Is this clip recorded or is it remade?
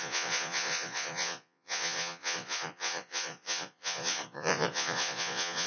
remade